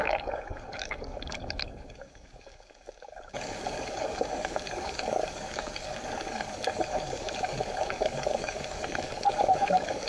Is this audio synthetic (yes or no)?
yes